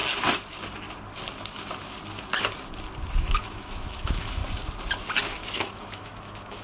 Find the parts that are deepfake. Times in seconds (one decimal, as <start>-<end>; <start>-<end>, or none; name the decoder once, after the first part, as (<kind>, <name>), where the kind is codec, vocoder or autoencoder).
3.2-4.4 (autoencoder, DAC-VAE); 5.2-6.6